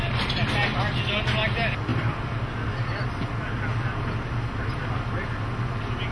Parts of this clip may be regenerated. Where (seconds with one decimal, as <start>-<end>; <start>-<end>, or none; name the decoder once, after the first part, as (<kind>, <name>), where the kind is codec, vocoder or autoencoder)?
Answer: none

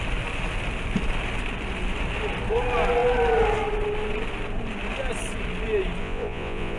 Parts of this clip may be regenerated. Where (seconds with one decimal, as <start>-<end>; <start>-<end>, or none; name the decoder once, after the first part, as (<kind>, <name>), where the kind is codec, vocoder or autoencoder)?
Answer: 6.0-6.8 (vocoder, Vocos)

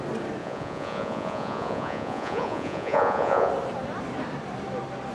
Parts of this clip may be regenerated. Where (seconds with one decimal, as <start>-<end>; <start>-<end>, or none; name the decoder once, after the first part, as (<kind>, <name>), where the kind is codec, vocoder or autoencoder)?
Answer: 0.4-3.5 (vocoder, Vocos)

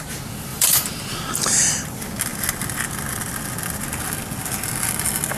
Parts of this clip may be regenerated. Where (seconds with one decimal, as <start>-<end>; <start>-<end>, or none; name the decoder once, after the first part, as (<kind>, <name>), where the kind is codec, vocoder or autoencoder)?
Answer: 0.5-1.4 (vocoder, BigVGAN v2)

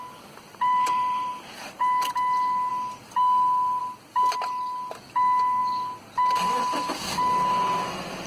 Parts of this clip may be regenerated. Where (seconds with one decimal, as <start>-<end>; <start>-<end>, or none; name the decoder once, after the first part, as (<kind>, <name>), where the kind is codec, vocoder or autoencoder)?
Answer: 0.5-1.3 (vocoder, BigVGAN v2)

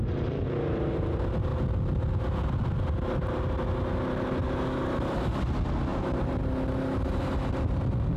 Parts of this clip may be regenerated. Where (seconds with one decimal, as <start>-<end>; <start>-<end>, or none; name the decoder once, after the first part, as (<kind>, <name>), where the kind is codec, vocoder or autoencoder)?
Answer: none